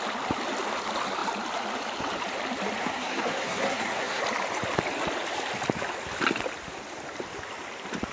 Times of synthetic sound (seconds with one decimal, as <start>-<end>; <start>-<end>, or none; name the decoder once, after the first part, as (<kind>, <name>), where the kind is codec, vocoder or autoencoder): 2.8-4.2 (codec, SNAC)